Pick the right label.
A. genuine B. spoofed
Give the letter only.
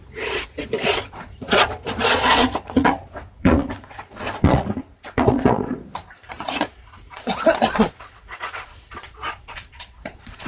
B